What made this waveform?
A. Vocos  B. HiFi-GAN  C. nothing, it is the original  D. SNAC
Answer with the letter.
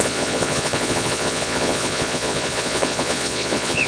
A